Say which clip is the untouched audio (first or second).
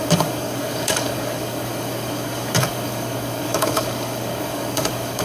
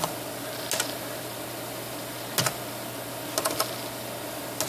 second